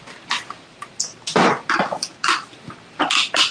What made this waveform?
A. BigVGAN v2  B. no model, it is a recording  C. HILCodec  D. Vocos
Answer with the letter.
B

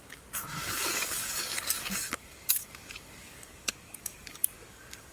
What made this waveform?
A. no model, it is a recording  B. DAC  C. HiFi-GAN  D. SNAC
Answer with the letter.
B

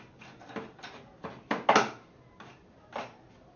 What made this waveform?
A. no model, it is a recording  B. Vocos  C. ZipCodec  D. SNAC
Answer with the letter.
A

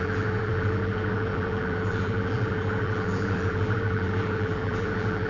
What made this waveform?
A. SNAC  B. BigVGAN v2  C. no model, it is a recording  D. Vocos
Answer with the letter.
B